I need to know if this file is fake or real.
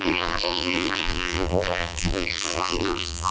fake